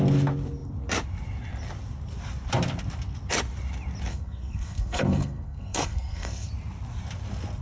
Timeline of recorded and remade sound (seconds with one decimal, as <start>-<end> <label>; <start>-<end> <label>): 0.0-4.1 recorded; 4.1-6.5 remade; 6.5-7.6 recorded

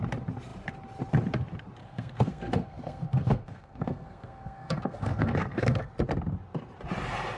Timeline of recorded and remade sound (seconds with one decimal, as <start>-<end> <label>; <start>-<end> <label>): 0.0-1.8 recorded; 1.8-5.9 remade; 5.9-7.4 recorded

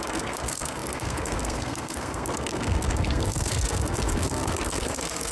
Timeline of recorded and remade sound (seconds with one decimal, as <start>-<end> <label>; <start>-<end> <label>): 0.0-5.3 remade

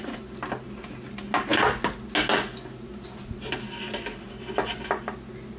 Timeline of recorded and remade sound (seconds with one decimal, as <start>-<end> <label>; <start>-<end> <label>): 0.0-5.6 recorded

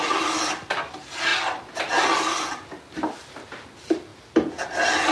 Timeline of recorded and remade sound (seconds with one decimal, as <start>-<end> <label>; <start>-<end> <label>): 0.0-5.1 recorded

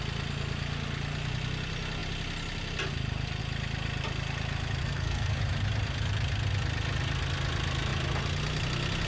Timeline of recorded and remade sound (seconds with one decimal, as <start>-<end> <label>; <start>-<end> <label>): 0.0-4.8 recorded; 4.8-5.4 remade; 5.4-9.1 recorded

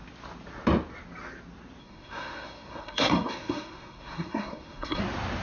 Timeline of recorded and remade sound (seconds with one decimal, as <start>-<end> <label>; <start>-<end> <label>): 0.0-1.8 recorded; 1.8-5.0 remade; 5.0-5.4 recorded

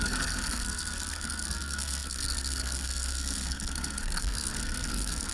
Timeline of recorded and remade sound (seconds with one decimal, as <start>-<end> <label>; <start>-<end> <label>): 0.0-5.3 remade